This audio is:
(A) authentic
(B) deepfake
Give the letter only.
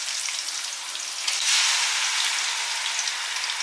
A